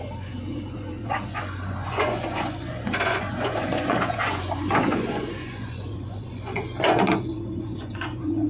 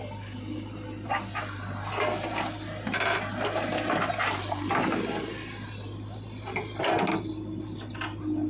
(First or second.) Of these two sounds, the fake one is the first